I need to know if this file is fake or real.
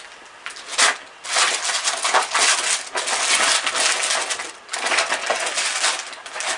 real